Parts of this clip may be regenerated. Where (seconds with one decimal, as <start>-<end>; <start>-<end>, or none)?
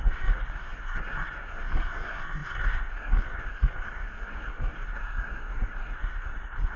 0.0-6.8